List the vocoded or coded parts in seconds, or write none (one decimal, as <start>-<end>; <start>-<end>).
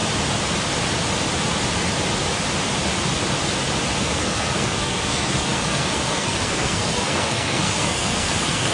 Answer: 4.0-8.7